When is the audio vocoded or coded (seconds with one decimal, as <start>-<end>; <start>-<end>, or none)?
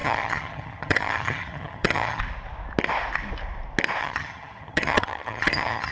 0.0-2.2; 4.0-5.9